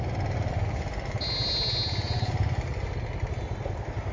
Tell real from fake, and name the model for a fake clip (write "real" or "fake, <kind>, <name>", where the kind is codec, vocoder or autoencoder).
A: real